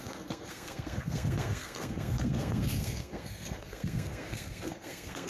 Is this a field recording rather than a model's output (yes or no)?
no